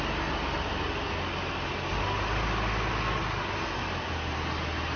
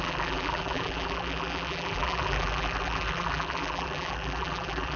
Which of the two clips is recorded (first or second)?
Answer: first